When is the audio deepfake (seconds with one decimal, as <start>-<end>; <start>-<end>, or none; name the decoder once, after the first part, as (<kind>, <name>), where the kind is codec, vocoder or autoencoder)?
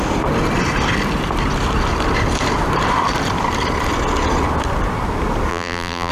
5.5-6.1 (vocoder, BigVGAN v2)